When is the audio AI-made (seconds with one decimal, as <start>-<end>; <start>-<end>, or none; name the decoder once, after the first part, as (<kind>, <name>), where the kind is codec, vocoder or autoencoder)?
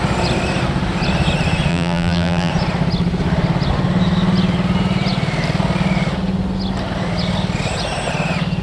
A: 1.7-2.5 (vocoder, BigVGAN v2)